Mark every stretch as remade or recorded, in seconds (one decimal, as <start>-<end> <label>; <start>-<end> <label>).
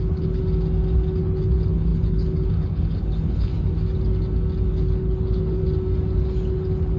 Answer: 0.0-0.4 remade; 0.4-1.2 recorded; 1.2-3.5 remade; 3.5-4.7 recorded; 4.7-5.6 remade; 5.6-6.2 recorded; 6.2-7.0 remade